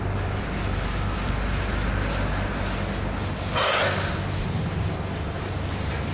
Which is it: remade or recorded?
recorded